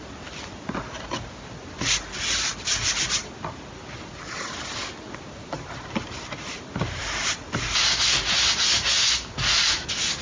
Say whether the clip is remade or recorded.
recorded